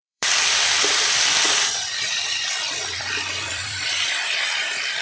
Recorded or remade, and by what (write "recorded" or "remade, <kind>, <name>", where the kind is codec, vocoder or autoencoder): remade, vocoder, BigVGAN v2